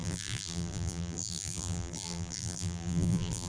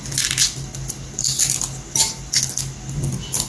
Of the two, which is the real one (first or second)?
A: second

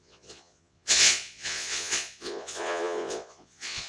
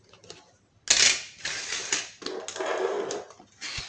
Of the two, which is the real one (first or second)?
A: second